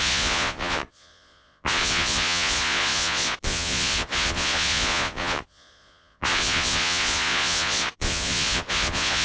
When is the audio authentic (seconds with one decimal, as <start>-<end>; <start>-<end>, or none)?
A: none